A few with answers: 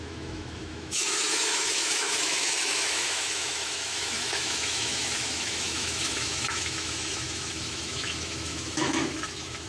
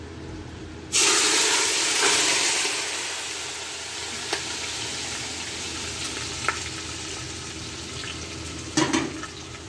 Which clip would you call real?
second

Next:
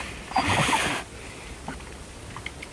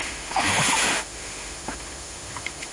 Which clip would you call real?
first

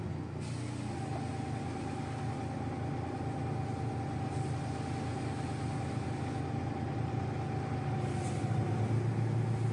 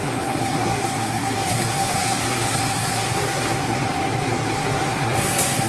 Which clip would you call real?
first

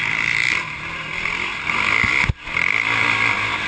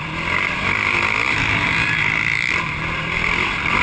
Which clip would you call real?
first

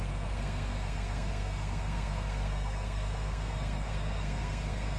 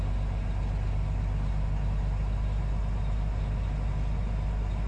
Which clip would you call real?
second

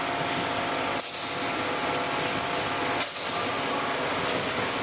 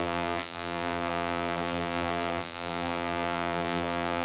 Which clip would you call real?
first